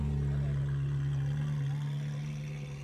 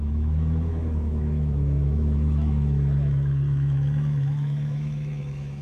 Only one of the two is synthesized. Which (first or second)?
second